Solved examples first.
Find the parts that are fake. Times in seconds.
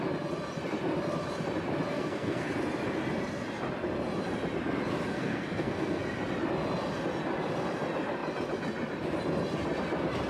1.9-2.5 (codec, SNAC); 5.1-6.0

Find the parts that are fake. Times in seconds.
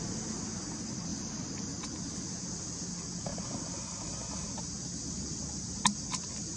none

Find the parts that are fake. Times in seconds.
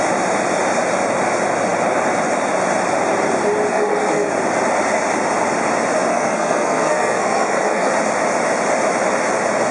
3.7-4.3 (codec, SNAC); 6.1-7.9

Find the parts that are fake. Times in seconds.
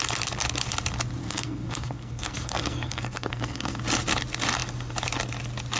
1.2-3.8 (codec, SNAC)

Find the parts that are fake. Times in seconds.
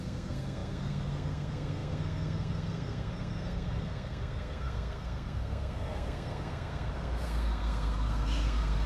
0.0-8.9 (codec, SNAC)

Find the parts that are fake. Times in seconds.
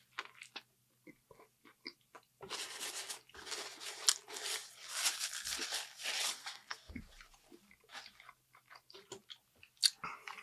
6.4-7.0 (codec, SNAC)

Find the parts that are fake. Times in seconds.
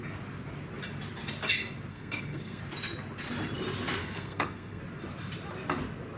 1.9-2.6 (codec, SNAC); 4.0-4.8